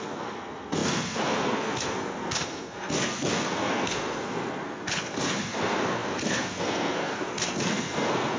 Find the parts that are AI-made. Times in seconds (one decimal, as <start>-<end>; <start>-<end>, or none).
0.0-8.4